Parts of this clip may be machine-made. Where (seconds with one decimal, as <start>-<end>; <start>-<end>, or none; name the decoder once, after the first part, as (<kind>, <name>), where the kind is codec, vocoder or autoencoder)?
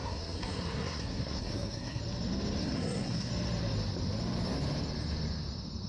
0.0-2.0 (codec, SNAC); 2.6-3.3